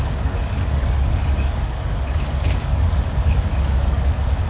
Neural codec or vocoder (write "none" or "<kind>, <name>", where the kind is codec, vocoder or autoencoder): codec, DAC